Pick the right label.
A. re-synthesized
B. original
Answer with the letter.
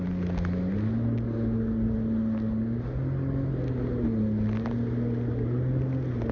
B